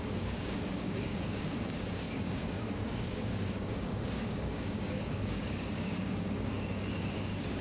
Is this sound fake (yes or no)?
yes